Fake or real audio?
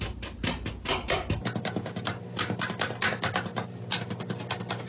real